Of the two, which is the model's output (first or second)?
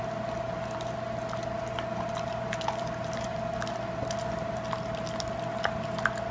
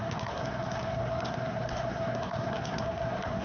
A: second